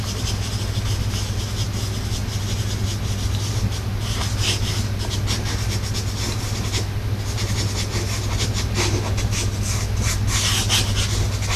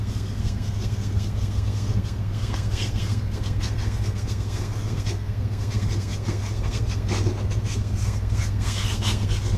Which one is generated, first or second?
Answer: second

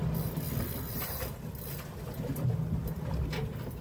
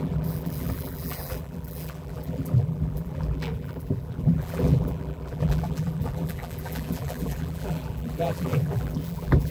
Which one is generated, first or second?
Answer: second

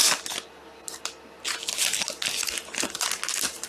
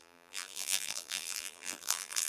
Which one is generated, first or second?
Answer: second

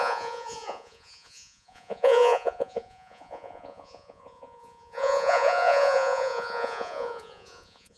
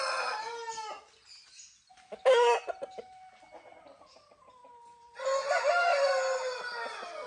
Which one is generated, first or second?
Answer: first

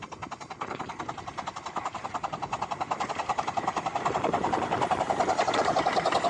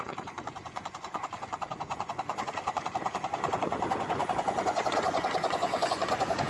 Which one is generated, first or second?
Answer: second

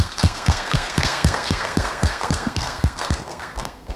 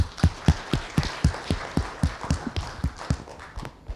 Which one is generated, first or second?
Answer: first